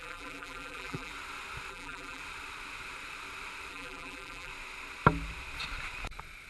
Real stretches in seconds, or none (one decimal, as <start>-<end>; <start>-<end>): 1.1-1.7; 2.2-3.7; 4.5-6.5